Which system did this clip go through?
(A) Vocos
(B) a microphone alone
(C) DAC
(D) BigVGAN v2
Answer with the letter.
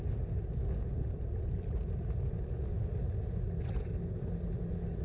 B